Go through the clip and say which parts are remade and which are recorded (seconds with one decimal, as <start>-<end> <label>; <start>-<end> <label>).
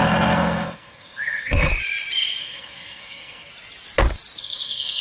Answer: 0.0-1.7 remade; 1.7-2.4 recorded; 2.4-3.5 remade; 3.5-4.4 recorded; 4.4-5.0 remade